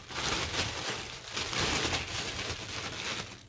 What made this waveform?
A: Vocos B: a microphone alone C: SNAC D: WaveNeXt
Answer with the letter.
B